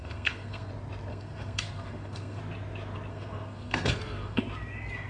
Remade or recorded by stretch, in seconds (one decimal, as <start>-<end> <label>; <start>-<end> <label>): 0.0-0.7 remade; 0.7-1.1 recorded; 1.1-2.4 remade; 2.4-3.1 recorded; 3.1-4.4 remade; 4.4-5.1 recorded